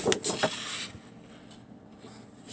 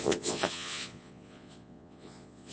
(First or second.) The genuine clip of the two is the first